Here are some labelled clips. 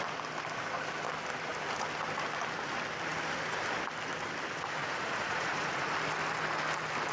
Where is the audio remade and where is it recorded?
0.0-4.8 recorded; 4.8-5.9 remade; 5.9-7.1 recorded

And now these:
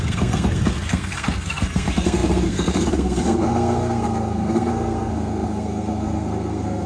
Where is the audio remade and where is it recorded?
0.0-6.9 remade